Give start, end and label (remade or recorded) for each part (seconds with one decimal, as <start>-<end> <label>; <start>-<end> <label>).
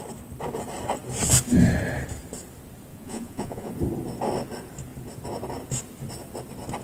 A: 0.0-2.9 recorded; 2.9-3.7 remade; 3.7-6.8 recorded